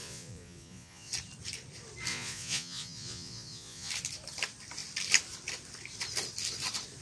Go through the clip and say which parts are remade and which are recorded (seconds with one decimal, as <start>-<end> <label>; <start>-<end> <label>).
0.0-1.1 remade; 1.1-2.1 recorded; 2.1-3.9 remade; 3.9-7.0 recorded